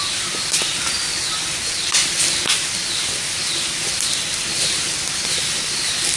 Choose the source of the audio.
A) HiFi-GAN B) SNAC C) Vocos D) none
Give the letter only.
D